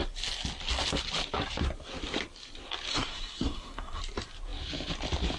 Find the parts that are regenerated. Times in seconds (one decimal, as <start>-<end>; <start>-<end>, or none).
2.9-4.0